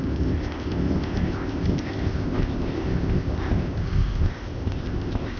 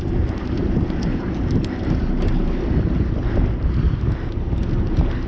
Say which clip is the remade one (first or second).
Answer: first